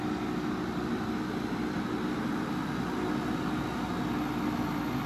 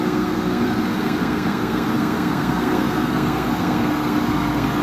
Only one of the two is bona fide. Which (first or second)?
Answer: first